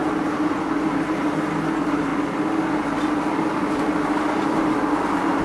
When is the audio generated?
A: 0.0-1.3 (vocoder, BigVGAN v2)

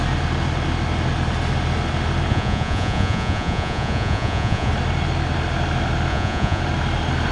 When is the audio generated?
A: 2.3-4.7 (vocoder, Vocos); 6.1-6.6

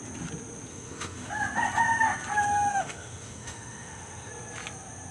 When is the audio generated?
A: 0.7-1.3 (autoencoder, DAC-VAE); 2.7-4.3